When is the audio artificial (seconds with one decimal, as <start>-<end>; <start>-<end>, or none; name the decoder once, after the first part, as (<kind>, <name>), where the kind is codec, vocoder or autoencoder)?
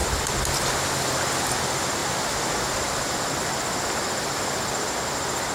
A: none